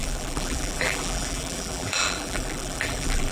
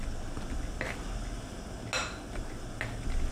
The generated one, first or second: first